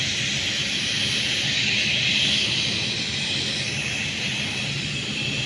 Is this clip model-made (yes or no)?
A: no